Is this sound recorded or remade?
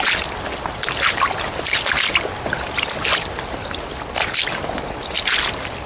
recorded